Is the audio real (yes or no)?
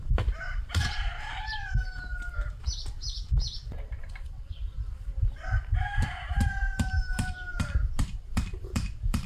no